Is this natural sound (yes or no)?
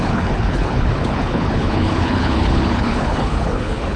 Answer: no